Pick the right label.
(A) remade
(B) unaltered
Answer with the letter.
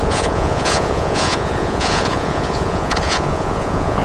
A